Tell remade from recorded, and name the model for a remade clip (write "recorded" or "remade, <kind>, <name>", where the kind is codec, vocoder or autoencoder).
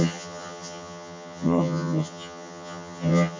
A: remade, vocoder, HiFi-GAN